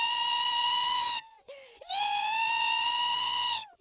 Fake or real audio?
fake